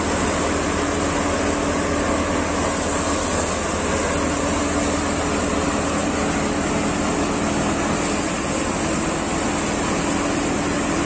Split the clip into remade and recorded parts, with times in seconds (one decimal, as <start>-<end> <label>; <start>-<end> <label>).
0.0-11.0 recorded